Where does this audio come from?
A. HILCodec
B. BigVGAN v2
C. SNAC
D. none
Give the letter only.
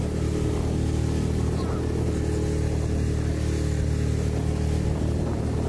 D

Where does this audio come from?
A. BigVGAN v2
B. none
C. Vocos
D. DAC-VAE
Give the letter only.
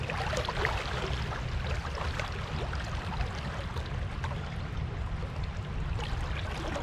B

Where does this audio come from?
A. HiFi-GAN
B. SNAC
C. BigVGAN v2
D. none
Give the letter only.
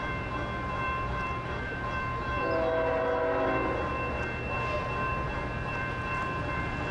C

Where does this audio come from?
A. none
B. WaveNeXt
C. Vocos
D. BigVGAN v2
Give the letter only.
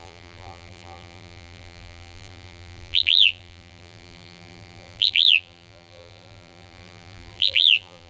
D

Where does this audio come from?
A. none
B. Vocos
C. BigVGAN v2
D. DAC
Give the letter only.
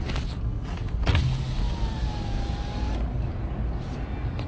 A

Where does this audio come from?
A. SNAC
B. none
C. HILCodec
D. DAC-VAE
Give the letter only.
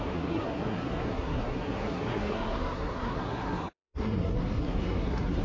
A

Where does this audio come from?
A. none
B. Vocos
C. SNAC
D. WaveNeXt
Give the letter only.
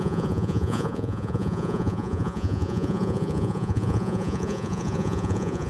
B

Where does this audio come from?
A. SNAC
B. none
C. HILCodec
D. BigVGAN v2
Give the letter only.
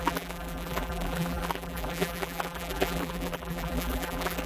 D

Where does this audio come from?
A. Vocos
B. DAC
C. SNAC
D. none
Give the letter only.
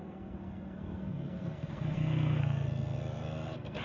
C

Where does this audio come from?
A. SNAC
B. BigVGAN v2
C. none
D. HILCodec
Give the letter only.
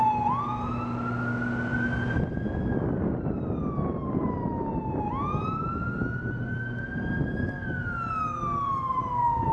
C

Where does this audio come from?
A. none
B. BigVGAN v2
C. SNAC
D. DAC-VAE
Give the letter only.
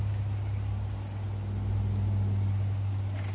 A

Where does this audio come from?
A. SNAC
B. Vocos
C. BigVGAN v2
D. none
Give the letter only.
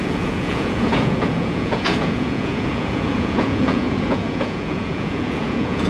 B